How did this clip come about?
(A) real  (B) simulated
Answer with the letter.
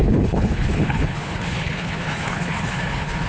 B